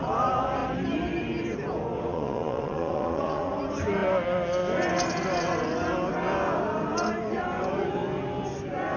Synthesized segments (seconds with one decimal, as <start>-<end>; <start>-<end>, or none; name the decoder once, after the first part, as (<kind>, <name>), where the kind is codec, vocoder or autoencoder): 2.1-3.5 (vocoder, Vocos)